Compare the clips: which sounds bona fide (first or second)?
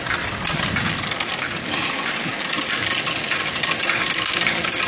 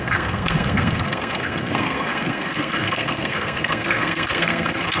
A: first